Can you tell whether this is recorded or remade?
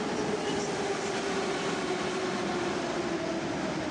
recorded